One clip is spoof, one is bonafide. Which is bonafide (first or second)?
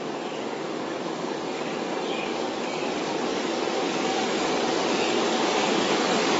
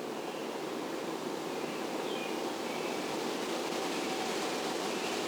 second